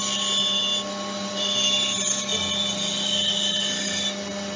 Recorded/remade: recorded